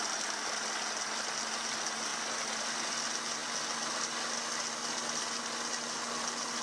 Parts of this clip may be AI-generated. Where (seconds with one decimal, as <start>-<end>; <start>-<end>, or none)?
none